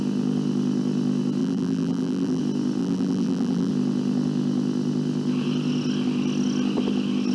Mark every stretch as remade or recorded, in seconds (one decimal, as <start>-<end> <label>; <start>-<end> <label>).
0.0-1.4 recorded; 1.4-2.4 remade; 2.4-2.8 recorded; 2.8-3.7 remade; 3.7-7.3 recorded